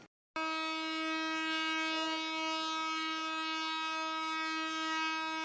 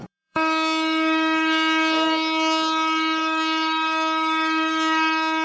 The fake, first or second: second